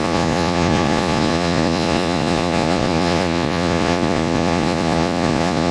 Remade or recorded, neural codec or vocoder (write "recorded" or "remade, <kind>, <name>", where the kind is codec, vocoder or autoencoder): remade, vocoder, Vocos